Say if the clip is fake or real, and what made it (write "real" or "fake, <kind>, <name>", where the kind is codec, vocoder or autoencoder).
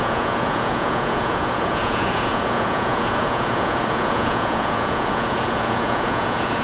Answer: fake, vocoder, Vocos